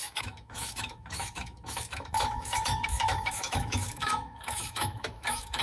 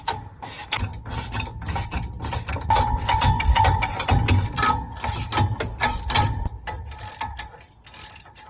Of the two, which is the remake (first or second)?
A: first